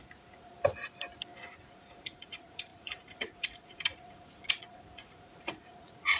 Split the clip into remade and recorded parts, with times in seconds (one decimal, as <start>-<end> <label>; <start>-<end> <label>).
0.0-0.5 remade; 0.5-1.5 recorded; 1.5-6.2 remade